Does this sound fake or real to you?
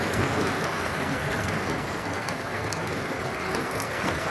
fake